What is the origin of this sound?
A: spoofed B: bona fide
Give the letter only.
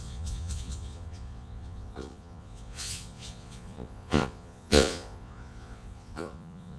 A